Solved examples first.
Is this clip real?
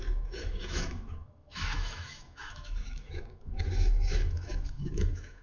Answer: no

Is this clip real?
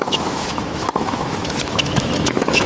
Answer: no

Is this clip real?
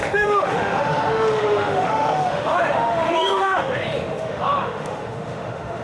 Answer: no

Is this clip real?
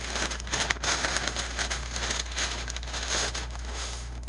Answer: no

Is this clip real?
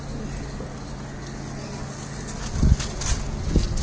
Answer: yes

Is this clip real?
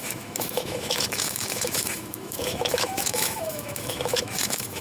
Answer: no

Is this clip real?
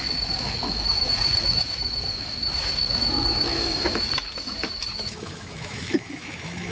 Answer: no